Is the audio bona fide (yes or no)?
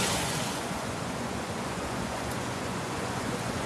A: no